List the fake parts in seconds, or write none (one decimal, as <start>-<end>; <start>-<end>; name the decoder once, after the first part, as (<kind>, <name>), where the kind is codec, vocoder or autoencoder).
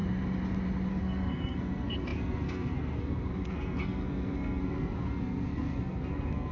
0.9-6.5 (codec, SNAC)